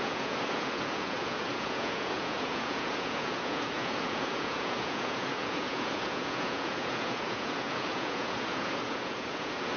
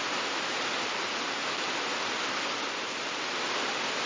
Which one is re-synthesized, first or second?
first